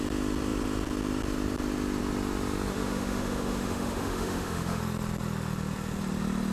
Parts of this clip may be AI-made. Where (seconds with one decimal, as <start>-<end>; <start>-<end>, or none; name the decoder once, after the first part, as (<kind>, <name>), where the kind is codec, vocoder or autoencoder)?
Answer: 2.7-4.8 (autoencoder, DAC-VAE)